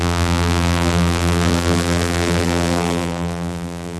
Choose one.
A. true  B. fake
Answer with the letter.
B